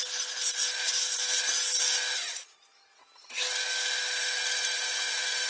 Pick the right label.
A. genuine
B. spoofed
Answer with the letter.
A